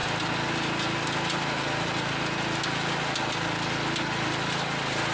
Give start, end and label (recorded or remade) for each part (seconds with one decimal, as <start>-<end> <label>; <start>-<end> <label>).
0.0-5.1 recorded